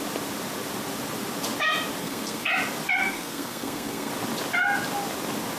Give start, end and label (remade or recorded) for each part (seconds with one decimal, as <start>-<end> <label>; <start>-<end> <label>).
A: 0.0-2.0 recorded; 2.0-2.5 remade; 2.5-3.0 recorded; 3.0-4.1 remade; 4.1-5.6 recorded